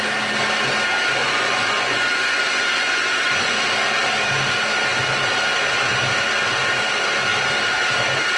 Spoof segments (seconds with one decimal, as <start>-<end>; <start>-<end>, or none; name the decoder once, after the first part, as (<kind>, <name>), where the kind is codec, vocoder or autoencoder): 1.2-3.6 (vocoder, Vocos)